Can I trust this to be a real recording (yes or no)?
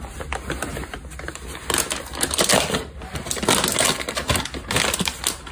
yes